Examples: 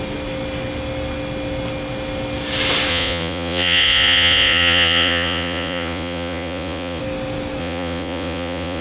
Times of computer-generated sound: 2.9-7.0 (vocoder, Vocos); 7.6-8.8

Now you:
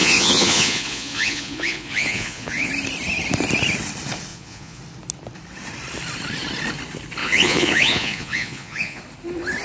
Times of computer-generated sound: 0.0-2.7 (vocoder, Vocos); 4.3-4.8; 7.2-9.0

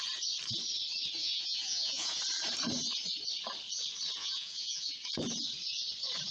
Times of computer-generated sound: 1.2-2.2 (vocoder, Vocos); 4.2-4.9

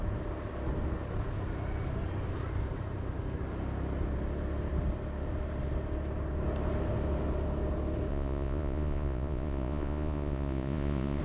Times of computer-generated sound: 8.1-11.2 (vocoder, Vocos)

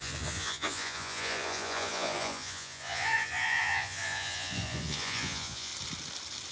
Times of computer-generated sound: 0.0-5.7 (vocoder, Vocos)

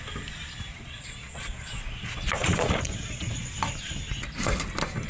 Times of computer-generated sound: 0.7-3.4 (vocoder, Vocos)

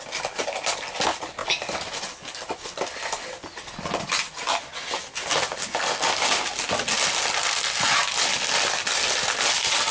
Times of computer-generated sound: none